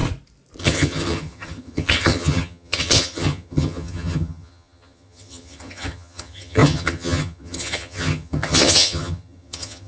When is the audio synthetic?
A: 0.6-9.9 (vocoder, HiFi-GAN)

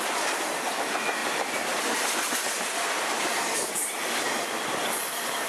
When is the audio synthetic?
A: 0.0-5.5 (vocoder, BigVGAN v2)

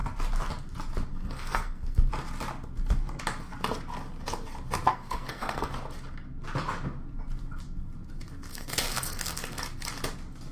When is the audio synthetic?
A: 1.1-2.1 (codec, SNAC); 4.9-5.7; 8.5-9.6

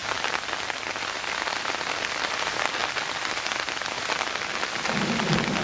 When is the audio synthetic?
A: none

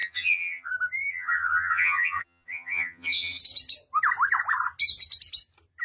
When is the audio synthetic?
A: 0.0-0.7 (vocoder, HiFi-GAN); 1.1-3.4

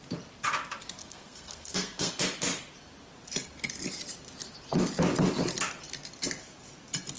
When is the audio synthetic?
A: 1.0-2.1 (codec, SNAC)

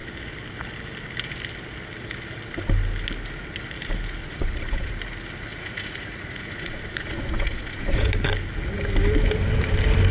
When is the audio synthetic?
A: 4.2-4.9 (vocoder, Vocos); 5.5-8.1

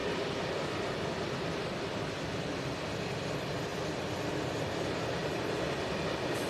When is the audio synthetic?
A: none